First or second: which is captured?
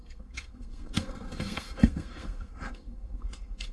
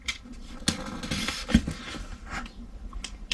second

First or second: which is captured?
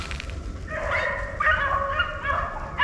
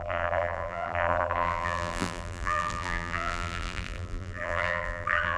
first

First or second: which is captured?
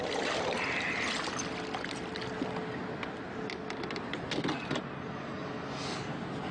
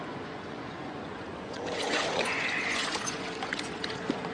first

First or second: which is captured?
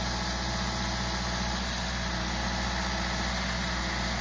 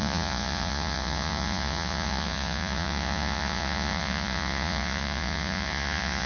first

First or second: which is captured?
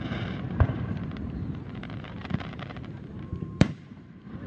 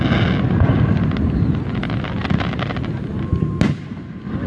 second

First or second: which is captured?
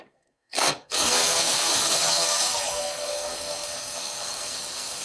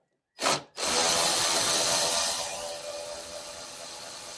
second